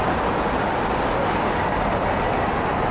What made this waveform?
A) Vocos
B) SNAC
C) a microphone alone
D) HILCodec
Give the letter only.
C